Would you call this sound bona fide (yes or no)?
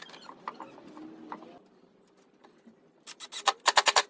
yes